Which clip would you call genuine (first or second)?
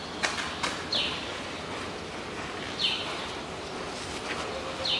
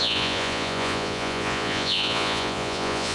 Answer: first